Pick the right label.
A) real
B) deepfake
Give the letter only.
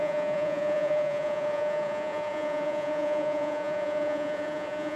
B